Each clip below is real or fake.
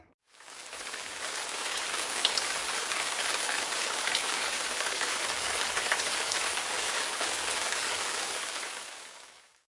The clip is fake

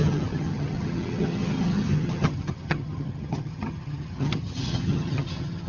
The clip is fake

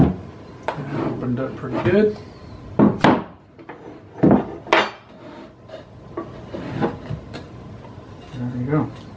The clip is real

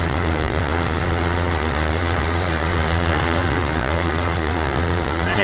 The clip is fake